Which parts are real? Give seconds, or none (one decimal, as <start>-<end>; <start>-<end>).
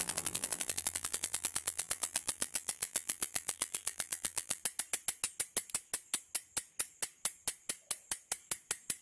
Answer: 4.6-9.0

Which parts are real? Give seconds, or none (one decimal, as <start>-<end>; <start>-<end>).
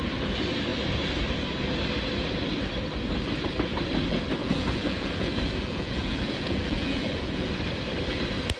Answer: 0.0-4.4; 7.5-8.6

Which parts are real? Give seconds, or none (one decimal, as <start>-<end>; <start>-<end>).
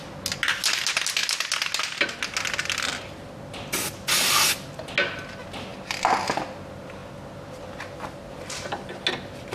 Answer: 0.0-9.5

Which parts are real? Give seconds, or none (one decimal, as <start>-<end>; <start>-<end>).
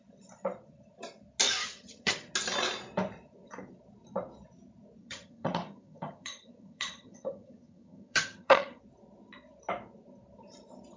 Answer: 0.0-1.6; 2.3-5.0; 8.8-11.0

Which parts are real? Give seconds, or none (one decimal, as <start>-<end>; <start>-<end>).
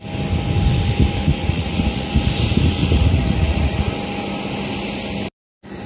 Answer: 0.0-1.4; 2.1-2.8; 3.9-5.9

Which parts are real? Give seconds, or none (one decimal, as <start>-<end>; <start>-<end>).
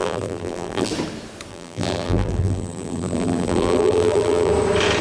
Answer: 0.9-1.5; 4.5-5.0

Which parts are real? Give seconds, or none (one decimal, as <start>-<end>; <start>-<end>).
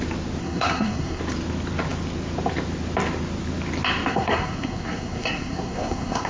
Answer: 0.0-0.4; 1.2-4.1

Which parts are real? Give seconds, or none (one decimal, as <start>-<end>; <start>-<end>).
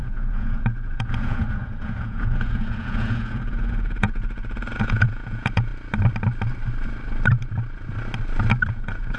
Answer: 5.7-8.7